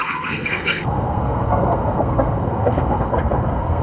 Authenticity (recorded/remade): remade